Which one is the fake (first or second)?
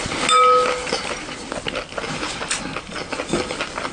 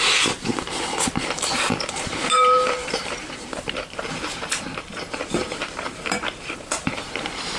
second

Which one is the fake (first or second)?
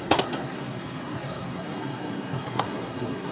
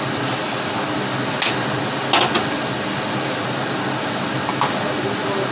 first